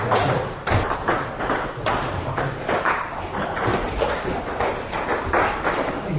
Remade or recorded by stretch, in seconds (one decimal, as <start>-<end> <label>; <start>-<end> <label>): 0.0-6.2 recorded